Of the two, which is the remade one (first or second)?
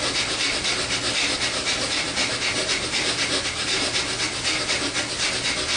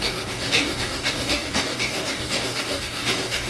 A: second